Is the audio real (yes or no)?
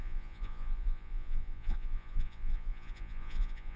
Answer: no